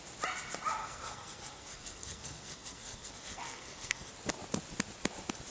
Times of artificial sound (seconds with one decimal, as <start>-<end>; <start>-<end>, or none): 0.8-4.1